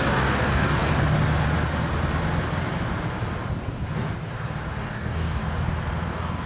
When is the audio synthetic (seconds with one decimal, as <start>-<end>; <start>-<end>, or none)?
0.0-0.9; 4.8-5.4; 6.1-6.5